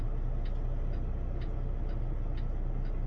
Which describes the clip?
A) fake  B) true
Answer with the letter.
B